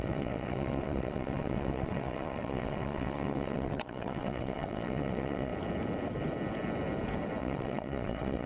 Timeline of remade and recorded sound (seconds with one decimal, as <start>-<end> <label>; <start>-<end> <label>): 0.0-5.5 remade; 5.5-7.4 recorded; 7.4-8.5 remade